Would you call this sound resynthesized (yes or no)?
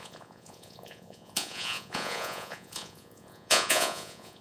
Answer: yes